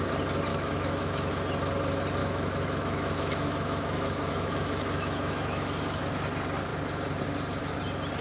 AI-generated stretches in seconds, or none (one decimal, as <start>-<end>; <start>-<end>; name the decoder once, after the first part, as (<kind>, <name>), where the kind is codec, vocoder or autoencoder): 0.5-1.3 (autoencoder, DAC-VAE); 2.2-6.1